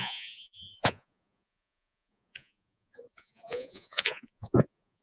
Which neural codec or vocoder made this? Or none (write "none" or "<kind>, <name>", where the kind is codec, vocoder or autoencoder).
vocoder, Vocos